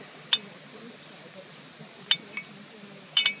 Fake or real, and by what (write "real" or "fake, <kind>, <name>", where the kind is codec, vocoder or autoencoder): real